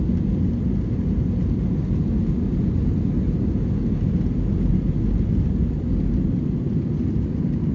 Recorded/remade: recorded